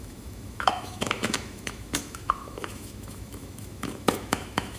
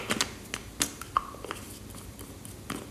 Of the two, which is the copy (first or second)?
first